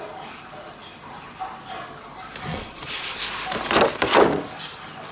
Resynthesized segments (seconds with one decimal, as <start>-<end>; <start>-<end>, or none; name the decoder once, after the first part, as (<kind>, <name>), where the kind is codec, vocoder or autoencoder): 2.5-3.2 (vocoder, Vocos)